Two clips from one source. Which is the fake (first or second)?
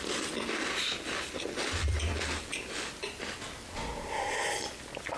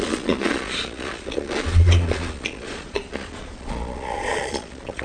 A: second